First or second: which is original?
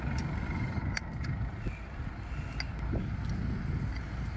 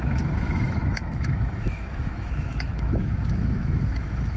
first